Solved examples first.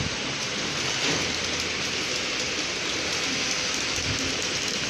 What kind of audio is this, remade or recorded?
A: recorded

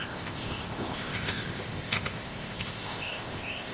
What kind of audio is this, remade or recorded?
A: remade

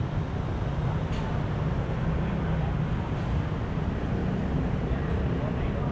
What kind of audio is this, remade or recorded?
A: recorded